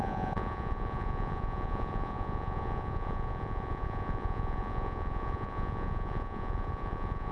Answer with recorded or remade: remade